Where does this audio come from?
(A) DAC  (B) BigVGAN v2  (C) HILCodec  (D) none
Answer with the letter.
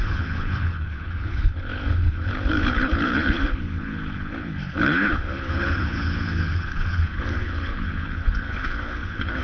C